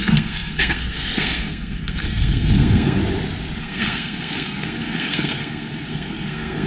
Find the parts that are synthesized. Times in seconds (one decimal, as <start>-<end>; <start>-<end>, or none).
0.0-3.0; 3.6-6.7